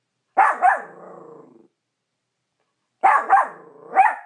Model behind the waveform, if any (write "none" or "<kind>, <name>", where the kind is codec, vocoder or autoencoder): vocoder, BigVGAN v2